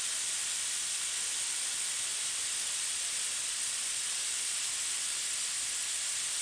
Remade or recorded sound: remade